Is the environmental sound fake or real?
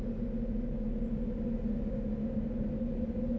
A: real